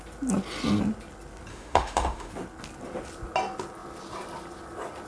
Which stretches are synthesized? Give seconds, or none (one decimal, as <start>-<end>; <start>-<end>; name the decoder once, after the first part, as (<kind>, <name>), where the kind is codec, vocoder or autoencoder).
1.5-2.3 (autoencoder, DAC-VAE)